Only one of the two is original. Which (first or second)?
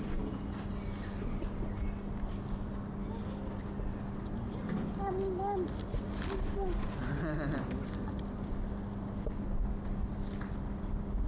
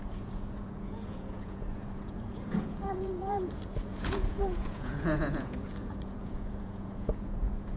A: first